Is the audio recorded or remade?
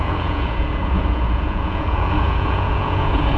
remade